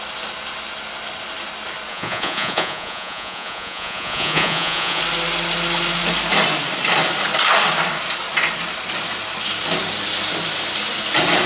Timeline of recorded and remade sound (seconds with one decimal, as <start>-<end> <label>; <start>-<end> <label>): 0.0-1.9 recorded; 1.9-5.0 remade; 5.0-11.5 recorded